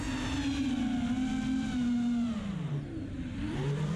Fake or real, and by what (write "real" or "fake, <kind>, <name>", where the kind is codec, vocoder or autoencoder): real